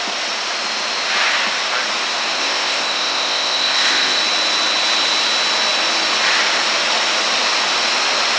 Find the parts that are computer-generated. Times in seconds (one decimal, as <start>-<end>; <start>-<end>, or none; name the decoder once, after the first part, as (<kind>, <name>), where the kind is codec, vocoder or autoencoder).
2.4-4.2 (codec, ZipCodec)